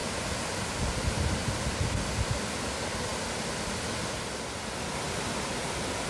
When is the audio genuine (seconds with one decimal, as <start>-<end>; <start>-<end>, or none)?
0.0-6.1

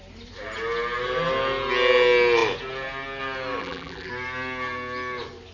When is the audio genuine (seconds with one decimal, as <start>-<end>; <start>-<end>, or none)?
0.0-3.6; 4.1-5.5

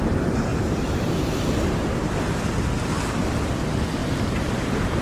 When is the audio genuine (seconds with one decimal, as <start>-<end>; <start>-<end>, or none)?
0.0-0.5; 3.3-4.0

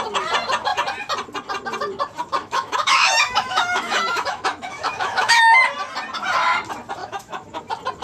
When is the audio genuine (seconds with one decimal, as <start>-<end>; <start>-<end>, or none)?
0.0-2.4; 5.6-7.0; 7.6-8.0

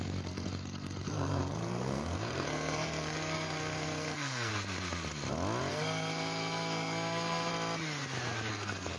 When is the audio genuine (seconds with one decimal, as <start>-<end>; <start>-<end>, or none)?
4.5-5.7; 7.5-8.5

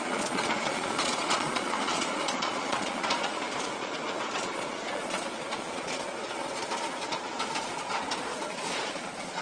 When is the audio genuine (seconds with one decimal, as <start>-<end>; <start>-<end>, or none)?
none